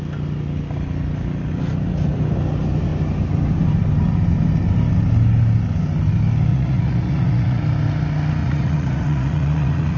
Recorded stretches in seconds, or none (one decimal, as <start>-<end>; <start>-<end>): 0.0-6.5; 7.6-8.4